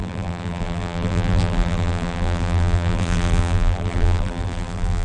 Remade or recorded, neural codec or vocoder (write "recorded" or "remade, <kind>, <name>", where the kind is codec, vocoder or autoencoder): remade, vocoder, BigVGAN v2